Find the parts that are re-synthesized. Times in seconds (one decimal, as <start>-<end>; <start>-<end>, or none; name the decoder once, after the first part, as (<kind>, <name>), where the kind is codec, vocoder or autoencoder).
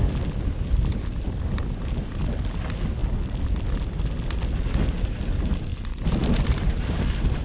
0.9-1.6 (vocoder, BigVGAN v2); 5.7-7.4